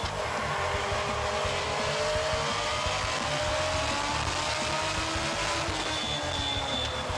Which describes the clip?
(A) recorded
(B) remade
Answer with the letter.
A